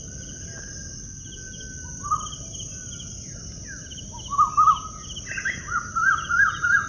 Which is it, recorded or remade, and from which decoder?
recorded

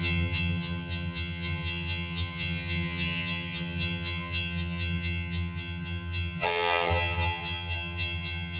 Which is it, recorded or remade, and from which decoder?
remade, vocoder, HiFi-GAN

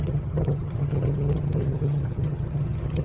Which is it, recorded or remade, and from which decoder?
remade, vocoder, HiFi-GAN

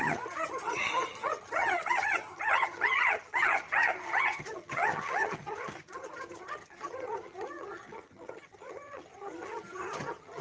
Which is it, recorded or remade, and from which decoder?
remade, vocoder, HiFi-GAN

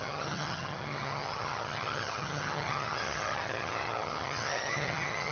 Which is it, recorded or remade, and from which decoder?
remade, vocoder, HiFi-GAN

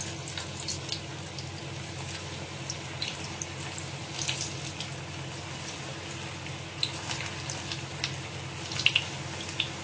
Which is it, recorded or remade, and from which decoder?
recorded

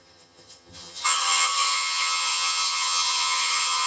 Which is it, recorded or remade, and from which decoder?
remade, vocoder, HiFi-GAN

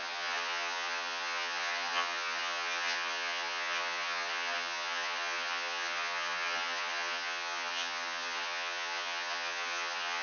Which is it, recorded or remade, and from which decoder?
remade, vocoder, HiFi-GAN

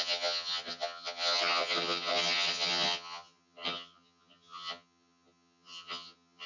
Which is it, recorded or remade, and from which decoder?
remade, vocoder, HiFi-GAN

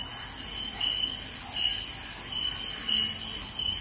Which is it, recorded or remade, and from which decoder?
recorded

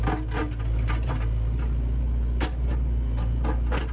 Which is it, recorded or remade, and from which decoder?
recorded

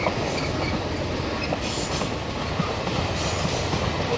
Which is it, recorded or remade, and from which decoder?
recorded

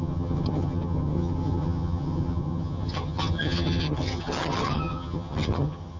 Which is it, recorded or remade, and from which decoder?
remade, vocoder, HiFi-GAN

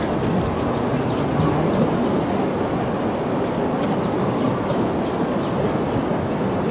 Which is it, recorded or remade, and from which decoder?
recorded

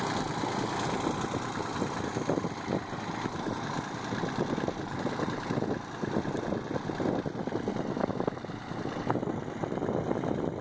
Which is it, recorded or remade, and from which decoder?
recorded